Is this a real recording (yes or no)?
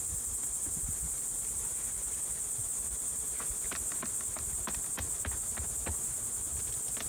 yes